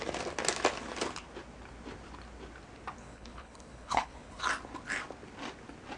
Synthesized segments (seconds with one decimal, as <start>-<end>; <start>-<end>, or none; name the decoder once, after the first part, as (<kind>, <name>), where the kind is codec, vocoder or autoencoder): 3.0-4.4 (codec, HILCodec)

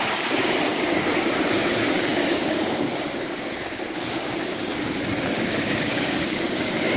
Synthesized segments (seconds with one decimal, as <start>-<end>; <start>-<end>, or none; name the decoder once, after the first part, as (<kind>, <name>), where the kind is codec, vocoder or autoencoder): 0.0-7.0 (codec, DAC)

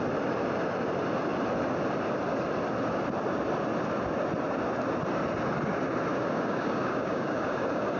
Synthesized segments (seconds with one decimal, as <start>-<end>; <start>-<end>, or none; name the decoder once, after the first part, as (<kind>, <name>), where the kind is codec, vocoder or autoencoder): 6.1-8.0 (codec, DAC)

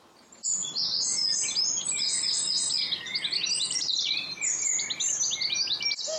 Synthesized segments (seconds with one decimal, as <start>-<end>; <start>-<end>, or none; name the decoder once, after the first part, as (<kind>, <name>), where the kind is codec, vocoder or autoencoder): none